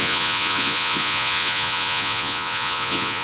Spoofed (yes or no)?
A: yes